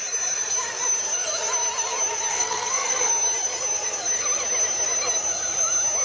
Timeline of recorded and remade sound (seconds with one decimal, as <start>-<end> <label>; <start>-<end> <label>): 0.0-2.3 recorded; 2.3-3.1 remade; 3.1-6.0 recorded